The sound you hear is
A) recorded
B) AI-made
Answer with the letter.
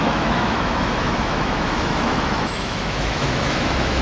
B